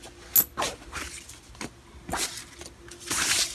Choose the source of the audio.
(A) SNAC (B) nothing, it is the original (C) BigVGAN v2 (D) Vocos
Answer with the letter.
B